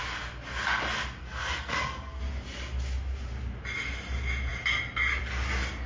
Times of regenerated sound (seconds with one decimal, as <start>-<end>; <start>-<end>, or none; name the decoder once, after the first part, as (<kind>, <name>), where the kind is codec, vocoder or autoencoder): 1.2-2.2 (codec, SNAC)